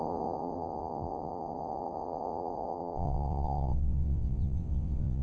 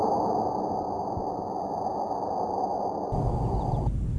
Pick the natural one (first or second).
second